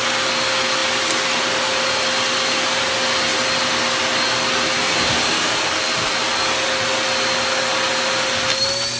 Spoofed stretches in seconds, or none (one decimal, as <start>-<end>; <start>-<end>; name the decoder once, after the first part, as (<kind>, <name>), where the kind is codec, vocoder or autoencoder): none